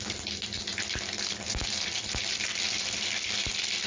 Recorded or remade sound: recorded